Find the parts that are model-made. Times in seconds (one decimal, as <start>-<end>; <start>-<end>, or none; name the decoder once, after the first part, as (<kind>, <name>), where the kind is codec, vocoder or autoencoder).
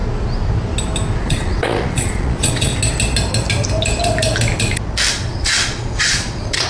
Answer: 1.2-2.7 (vocoder, Vocos); 5.1-6.7